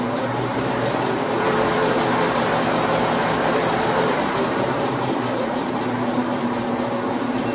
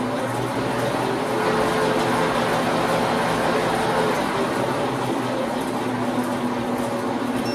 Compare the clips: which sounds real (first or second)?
second